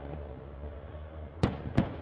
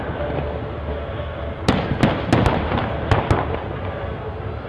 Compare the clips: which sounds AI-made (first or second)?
first